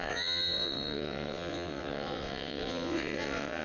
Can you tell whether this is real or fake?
fake